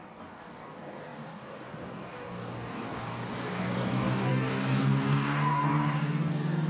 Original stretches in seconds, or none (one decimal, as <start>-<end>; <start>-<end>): none